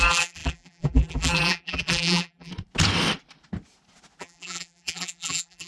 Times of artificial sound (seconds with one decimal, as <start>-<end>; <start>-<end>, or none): 0.0-2.5; 4.2-5.7